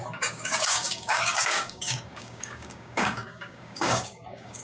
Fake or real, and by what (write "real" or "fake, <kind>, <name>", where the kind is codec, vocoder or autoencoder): fake, codec, DAC